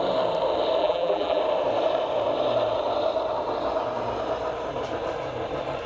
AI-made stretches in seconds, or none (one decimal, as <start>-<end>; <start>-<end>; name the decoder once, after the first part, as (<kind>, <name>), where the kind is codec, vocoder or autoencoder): 0.8-1.4 (vocoder, BigVGAN v2)